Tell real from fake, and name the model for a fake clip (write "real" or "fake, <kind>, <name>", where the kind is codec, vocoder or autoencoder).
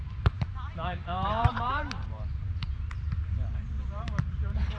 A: fake, vocoder, BigVGAN v2